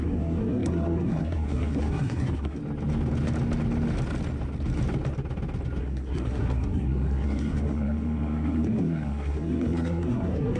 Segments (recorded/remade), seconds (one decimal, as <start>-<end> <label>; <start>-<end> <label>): 0.0-2.6 remade; 2.6-5.8 recorded; 5.8-10.6 remade